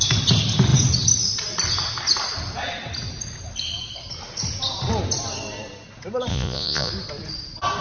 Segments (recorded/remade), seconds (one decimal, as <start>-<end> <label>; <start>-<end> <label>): 0.0-6.3 recorded; 6.3-6.9 remade; 6.9-7.8 recorded